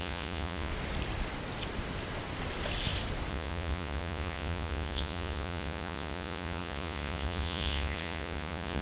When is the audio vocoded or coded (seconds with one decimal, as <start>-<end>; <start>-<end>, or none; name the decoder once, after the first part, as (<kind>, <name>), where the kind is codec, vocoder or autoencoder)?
0.0-0.7 (vocoder, Vocos); 3.3-8.8